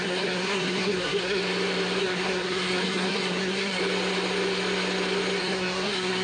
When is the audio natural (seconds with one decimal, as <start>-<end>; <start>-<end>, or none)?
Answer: 1.4-2.0; 3.8-5.4